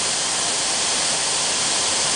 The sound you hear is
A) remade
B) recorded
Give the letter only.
B